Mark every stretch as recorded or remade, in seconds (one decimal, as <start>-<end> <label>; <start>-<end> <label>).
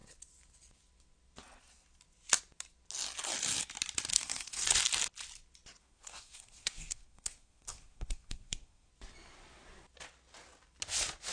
0.0-4.1 recorded; 4.1-4.7 remade; 4.7-5.8 recorded; 5.8-8.9 remade; 8.9-11.3 recorded